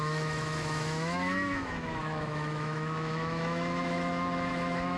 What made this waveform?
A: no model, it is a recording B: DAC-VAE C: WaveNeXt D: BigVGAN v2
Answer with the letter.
B